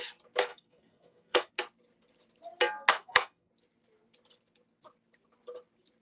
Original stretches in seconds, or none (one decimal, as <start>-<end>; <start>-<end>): 0.0-0.5; 1.5-2.9; 3.5-6.0